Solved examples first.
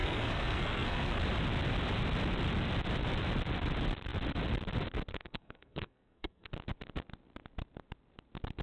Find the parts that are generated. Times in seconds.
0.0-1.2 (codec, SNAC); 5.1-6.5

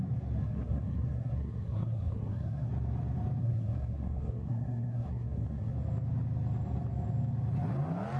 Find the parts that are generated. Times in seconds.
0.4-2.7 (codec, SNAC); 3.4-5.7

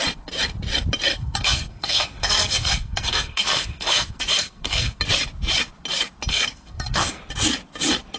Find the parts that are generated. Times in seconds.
1.1-5.0 (codec, SNAC); 6.3-7.2